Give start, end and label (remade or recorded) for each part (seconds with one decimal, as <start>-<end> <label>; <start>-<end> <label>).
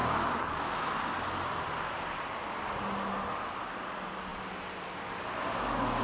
0.0-6.0 recorded